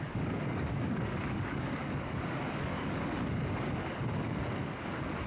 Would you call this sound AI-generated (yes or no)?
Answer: yes